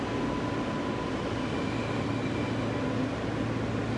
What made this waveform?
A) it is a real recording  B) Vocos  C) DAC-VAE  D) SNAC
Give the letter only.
A